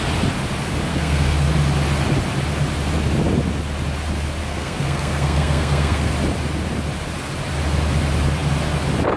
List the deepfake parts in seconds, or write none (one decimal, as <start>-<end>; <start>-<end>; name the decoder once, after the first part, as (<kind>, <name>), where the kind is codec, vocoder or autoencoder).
0.9-1.5 (codec, SNAC); 4.4-6.1